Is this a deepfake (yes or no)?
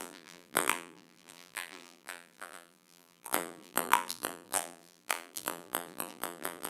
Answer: yes